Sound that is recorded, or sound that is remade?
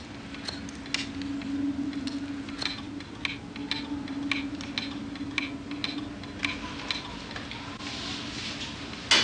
recorded